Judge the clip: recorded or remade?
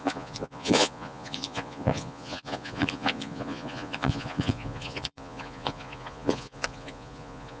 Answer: remade